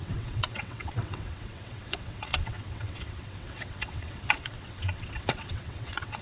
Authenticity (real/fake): fake